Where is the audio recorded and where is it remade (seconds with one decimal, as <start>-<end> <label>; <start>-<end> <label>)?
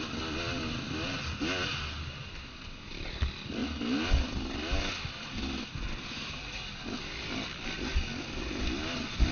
0.0-9.3 recorded